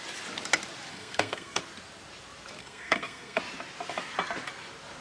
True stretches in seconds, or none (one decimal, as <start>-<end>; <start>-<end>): 0.0-0.9; 1.6-2.6; 3.4-5.0